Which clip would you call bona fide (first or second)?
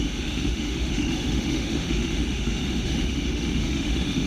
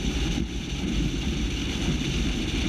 second